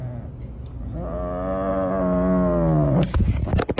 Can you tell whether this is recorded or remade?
recorded